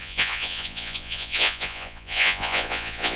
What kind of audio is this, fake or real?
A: fake